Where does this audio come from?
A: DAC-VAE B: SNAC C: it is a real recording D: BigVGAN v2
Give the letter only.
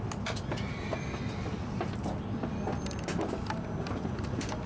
C